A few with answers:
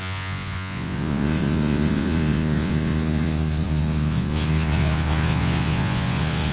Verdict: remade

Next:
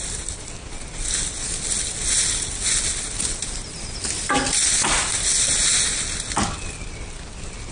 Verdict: recorded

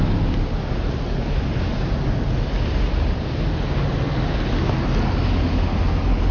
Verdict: recorded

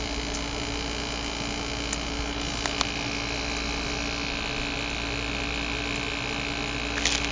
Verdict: recorded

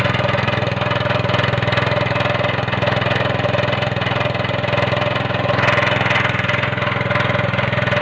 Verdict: recorded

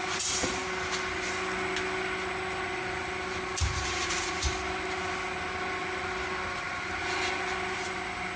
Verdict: recorded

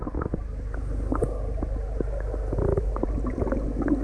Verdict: recorded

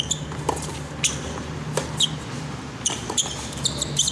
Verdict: remade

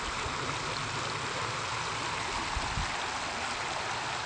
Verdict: recorded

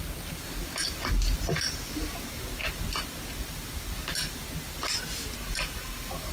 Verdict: recorded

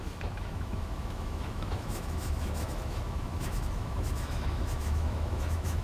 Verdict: remade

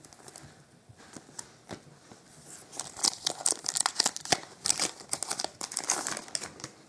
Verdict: recorded